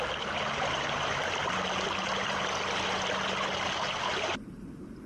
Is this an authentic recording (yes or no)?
yes